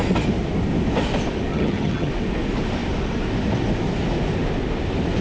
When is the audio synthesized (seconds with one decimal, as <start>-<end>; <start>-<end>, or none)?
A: 1.5-2.1

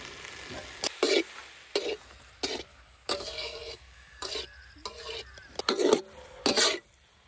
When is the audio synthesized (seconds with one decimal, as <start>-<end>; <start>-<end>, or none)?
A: 2.7-4.3

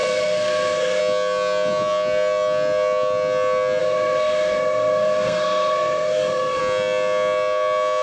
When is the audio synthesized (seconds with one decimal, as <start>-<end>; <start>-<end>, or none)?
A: 0.0-1.0; 3.8-6.6

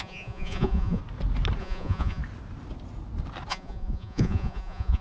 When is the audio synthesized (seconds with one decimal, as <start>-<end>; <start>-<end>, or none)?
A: 0.0-1.0; 1.6-2.2; 3.5-5.0

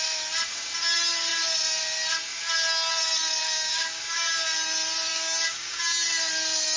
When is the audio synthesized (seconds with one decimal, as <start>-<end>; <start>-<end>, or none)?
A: 3.4-4.0; 5.1-5.8

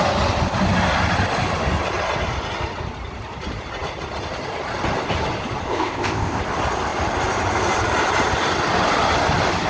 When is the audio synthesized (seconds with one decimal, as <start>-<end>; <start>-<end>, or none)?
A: 5.7-6.4